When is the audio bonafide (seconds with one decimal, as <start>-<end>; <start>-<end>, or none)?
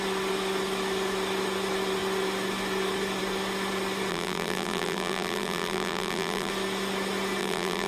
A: 0.0-4.1; 6.5-7.4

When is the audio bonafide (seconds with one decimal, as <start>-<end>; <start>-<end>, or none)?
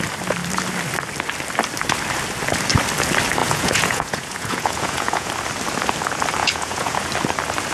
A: 0.0-3.4; 5.3-6.4; 7.0-7.7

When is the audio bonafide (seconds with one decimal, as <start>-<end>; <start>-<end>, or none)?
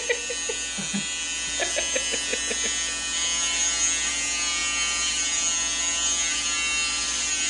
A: 0.0-7.5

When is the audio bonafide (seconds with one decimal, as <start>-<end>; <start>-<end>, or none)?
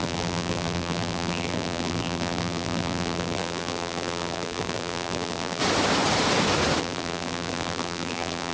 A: 5.6-6.8